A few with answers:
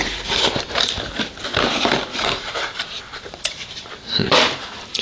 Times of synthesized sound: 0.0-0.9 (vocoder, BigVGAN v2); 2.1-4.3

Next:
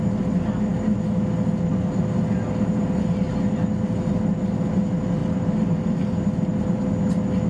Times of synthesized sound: 5.2-6.0 (vocoder, BigVGAN v2)

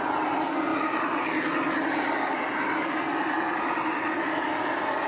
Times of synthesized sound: 0.7-3.6 (vocoder, BigVGAN v2)

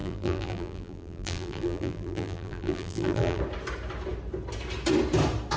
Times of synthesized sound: 0.0-3.4 (vocoder, BigVGAN v2)

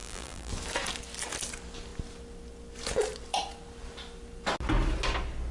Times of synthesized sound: 0.0-0.5 (vocoder, BigVGAN v2)

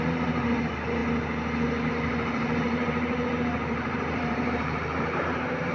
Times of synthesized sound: 0.0-1.0 (vocoder, BigVGAN v2); 1.9-5.7

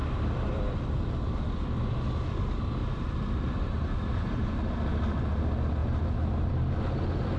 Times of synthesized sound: 0.0-0.6 (vocoder, BigVGAN v2); 2.8-4.5; 5.8-6.5

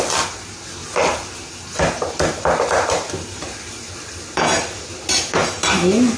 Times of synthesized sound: 0.8-4.2 (vocoder, BigVGAN v2); 5.4-6.2